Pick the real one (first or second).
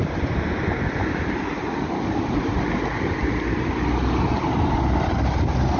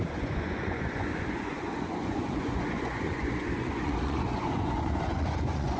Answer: first